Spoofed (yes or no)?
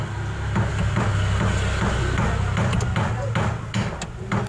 no